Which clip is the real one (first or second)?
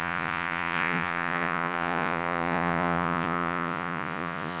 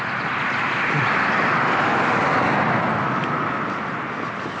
second